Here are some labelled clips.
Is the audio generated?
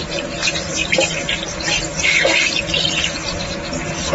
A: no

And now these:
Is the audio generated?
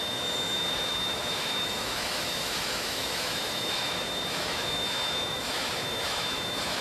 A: yes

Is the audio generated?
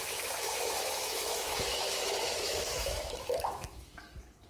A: yes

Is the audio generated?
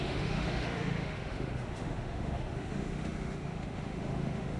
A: yes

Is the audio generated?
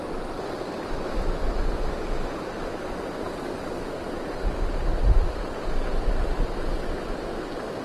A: no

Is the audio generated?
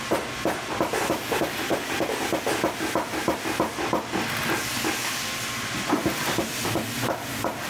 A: no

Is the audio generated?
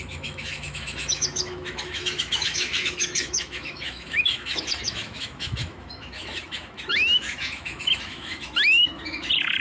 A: yes